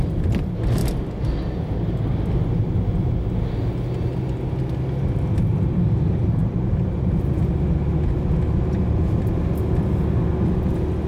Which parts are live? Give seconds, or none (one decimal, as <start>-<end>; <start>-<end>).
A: 0.8-5.5; 6.4-11.1